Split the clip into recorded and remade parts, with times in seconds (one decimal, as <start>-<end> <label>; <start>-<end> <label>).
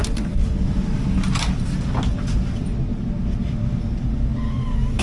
0.0-5.0 recorded